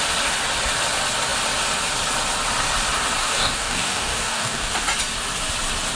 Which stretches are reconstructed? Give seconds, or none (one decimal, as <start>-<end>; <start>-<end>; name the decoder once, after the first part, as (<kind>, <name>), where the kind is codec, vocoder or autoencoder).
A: 3.2-4.7 (codec, DAC)